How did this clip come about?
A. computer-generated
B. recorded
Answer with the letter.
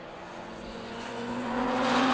A